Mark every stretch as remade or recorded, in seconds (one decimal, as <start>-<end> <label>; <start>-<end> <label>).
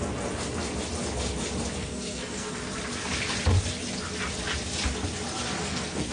0.0-1.8 recorded; 1.8-2.7 remade; 2.7-5.6 recorded; 5.6-6.1 remade